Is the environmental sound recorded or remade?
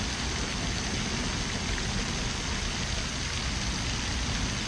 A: recorded